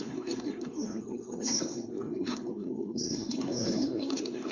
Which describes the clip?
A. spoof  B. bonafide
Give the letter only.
A